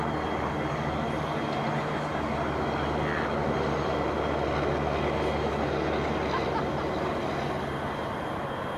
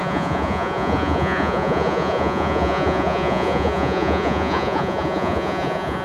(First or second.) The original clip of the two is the first